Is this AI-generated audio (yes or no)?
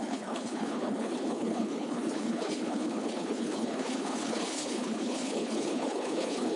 yes